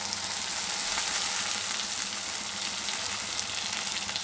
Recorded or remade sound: recorded